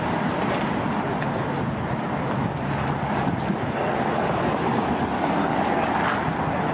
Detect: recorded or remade recorded